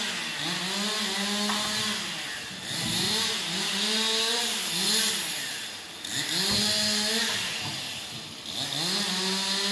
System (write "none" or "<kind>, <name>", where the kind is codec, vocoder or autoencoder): none